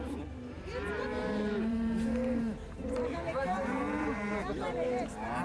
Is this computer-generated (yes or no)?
yes